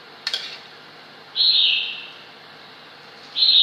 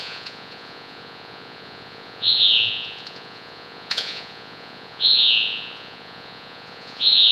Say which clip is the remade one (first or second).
second